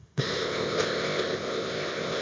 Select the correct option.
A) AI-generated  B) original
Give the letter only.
A